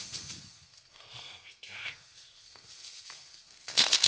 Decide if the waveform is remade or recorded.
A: remade